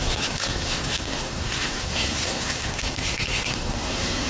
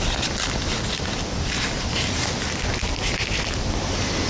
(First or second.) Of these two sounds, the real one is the second